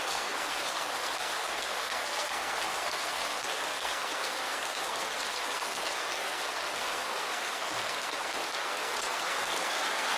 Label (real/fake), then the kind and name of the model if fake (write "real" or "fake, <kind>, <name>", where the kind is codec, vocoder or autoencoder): fake, codec, SNAC